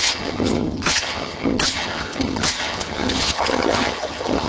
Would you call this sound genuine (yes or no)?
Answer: no